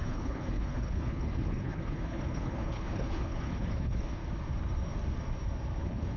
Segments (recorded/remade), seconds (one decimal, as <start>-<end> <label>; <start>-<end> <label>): 0.0-4.2 remade; 4.2-5.8 recorded; 5.8-6.2 remade